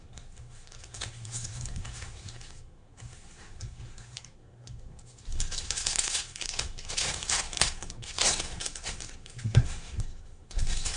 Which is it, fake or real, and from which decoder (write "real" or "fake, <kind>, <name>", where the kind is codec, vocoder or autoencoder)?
fake, codec, SNAC